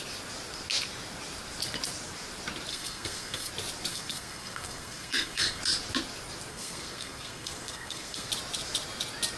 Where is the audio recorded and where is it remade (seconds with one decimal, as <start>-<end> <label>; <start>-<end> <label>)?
0.0-2.7 recorded; 2.7-3.5 remade; 3.5-3.9 recorded; 3.9-5.6 remade; 5.6-6.5 recorded; 6.5-8.3 remade; 8.3-9.4 recorded